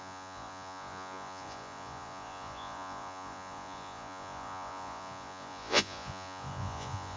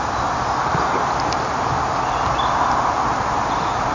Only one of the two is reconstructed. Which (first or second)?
first